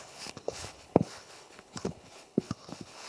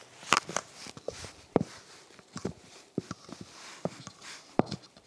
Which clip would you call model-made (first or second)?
first